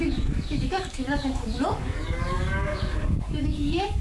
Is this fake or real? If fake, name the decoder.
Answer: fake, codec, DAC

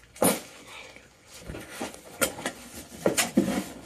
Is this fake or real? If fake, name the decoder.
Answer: fake, vocoder, Vocos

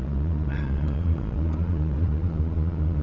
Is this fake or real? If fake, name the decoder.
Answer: fake, vocoder, Vocos